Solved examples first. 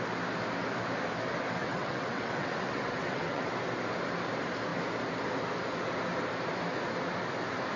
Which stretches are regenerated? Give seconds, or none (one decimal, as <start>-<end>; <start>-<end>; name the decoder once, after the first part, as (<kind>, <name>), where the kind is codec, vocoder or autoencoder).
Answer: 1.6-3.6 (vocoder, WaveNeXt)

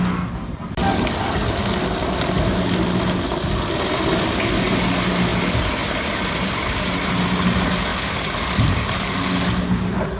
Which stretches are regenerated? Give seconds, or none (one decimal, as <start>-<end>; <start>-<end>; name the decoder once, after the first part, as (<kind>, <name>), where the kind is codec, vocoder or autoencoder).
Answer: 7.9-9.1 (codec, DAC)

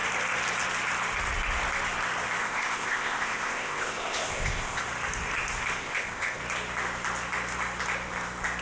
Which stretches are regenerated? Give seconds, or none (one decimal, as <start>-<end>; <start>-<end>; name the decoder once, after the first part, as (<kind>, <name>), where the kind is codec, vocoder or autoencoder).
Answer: 2.4-4.8 (codec, ZipCodec); 5.8-6.4

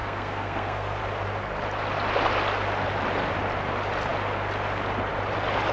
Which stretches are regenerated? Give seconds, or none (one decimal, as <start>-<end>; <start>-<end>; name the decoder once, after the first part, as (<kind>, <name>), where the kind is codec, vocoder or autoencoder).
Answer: 0.0-1.0 (codec, SNAC)

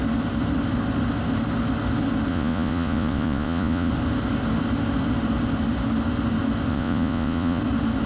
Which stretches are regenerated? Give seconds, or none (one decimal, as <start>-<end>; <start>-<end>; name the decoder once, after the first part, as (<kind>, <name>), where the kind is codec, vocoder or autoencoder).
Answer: 2.3-3.9 (vocoder, Vocos); 6.7-7.6

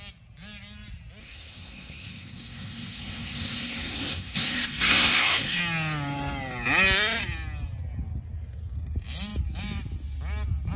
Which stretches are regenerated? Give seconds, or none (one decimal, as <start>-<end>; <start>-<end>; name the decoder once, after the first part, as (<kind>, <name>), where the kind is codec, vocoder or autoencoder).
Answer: 1.2-5.6 (codec, SNAC)

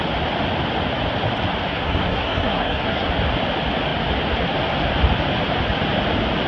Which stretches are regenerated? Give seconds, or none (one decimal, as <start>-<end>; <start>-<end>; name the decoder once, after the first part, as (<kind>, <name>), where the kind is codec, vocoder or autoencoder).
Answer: 1.7-3.1 (codec, SNAC)

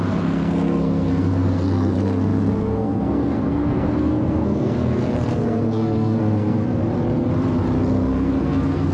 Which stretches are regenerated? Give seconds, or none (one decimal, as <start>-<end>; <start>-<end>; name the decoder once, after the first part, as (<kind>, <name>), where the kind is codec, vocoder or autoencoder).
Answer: 0.0-6.8 (codec, SNAC); 7.9-8.9